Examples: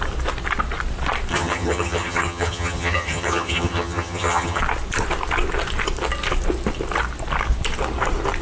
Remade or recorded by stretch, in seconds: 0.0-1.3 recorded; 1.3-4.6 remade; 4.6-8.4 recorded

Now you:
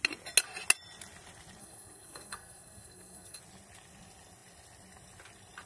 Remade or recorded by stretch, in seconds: 0.0-1.6 recorded; 1.6-3.4 remade; 3.4-5.7 recorded

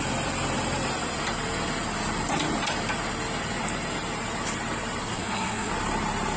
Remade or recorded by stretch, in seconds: 0.0-5.0 recorded; 5.0-5.7 remade; 5.7-6.4 recorded

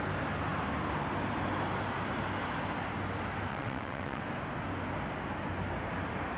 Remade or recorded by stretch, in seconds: 0.0-3.5 recorded; 3.5-4.2 remade; 4.2-6.4 recorded